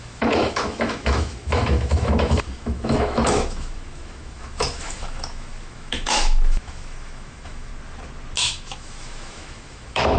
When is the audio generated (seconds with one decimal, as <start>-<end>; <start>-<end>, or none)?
0.0-7.7; 8.4-10.2